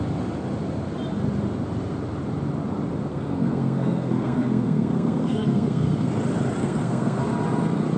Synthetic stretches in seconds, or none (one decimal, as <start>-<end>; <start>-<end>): 3.1-6.1; 6.6-7.2